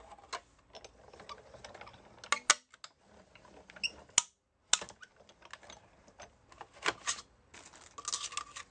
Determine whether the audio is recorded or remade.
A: recorded